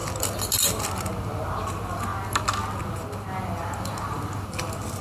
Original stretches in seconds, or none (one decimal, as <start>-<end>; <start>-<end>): 0.0-1.7; 2.1-3.4